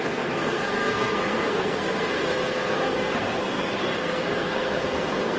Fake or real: fake